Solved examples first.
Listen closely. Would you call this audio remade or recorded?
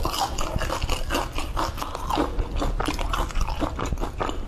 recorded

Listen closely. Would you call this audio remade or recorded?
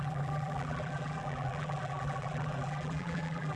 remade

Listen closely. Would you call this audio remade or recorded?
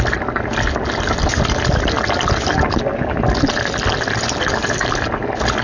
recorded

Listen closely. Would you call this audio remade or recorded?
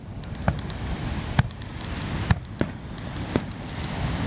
recorded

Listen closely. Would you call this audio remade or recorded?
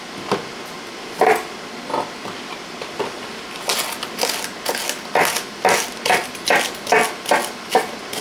recorded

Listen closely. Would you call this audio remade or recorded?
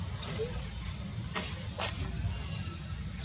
recorded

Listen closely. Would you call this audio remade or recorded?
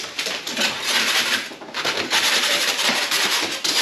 remade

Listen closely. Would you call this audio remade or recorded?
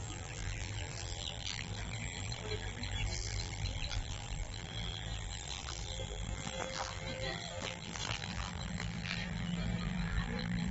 remade